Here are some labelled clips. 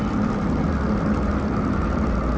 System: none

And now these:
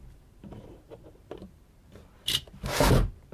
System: vocoder, BigVGAN v2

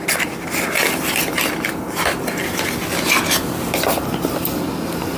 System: none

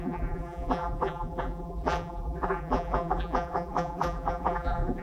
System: vocoder, BigVGAN v2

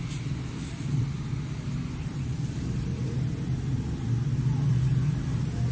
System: none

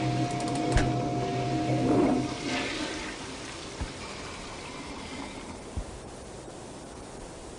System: none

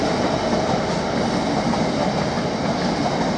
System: none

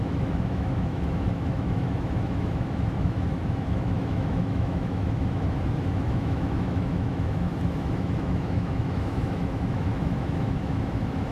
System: autoencoder, DAC-VAE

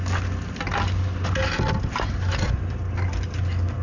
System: none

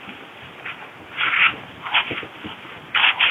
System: none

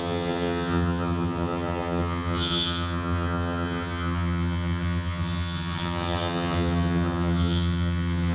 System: vocoder, HiFi-GAN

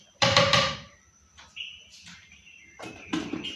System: vocoder, BigVGAN v2